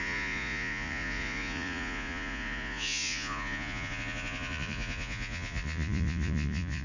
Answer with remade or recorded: remade